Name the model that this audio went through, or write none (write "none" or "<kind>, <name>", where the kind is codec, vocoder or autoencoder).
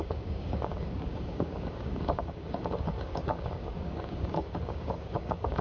codec, DAC